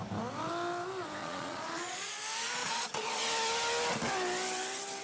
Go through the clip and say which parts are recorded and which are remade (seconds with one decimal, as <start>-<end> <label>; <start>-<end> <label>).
0.0-1.2 recorded; 1.2-2.2 remade; 2.2-2.6 recorded; 2.6-3.2 remade; 3.2-5.0 recorded